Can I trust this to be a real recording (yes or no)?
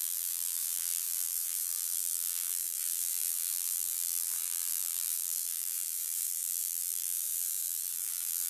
no